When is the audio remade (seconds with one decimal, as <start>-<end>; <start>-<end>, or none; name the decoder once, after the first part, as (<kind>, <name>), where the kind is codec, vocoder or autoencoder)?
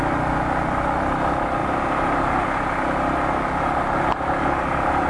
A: none